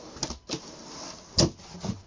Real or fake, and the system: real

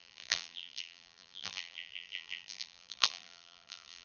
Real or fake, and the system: fake, vocoder, BigVGAN v2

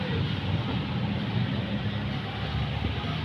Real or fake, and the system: real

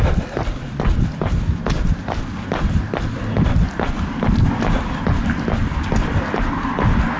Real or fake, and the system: fake, vocoder, BigVGAN v2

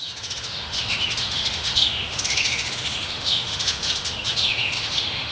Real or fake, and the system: fake, autoencoder, DAC-VAE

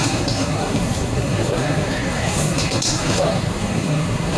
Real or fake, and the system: fake, codec, SNAC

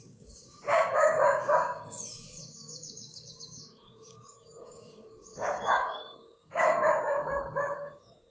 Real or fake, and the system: fake, codec, DAC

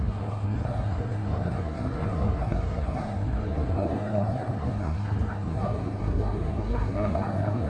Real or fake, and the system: fake, codec, SNAC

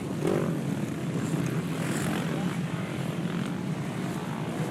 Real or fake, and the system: real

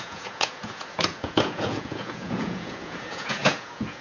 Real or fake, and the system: fake, vocoder, Vocos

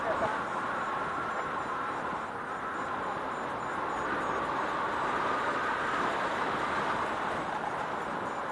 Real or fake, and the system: real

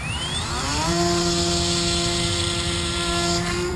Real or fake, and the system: fake, vocoder, BigVGAN v2